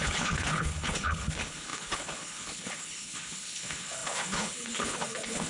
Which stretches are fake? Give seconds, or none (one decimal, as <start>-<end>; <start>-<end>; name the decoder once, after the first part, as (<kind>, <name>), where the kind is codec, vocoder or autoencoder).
0.0-5.5 (codec, HILCodec)